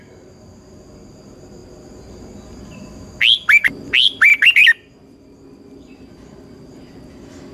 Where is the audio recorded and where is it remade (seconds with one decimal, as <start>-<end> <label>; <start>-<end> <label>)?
0.0-7.5 recorded